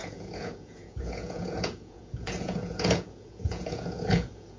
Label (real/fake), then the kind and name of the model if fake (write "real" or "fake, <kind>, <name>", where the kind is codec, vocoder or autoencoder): fake, vocoder, Vocos